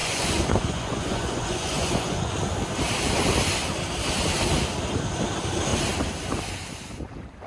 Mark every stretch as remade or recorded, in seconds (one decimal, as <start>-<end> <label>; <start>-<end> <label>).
0.0-2.3 remade; 2.3-7.5 recorded